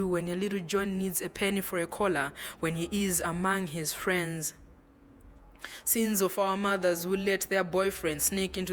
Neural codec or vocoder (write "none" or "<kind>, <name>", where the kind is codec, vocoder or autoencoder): vocoder, Vocos